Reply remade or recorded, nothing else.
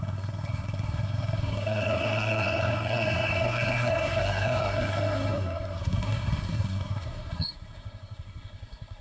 remade